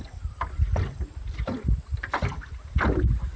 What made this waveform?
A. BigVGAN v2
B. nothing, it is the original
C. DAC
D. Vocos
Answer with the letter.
B